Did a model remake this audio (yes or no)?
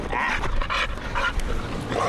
no